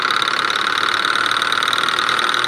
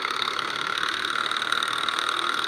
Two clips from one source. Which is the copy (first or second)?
second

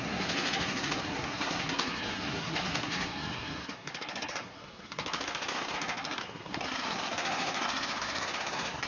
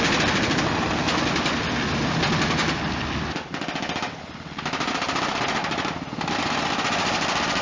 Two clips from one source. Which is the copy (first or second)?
first